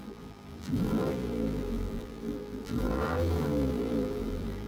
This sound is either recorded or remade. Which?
remade